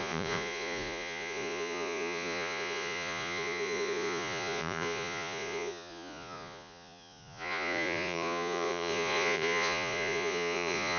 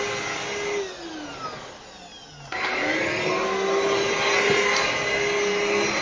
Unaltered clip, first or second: second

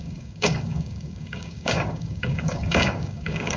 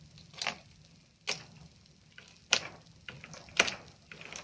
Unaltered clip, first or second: second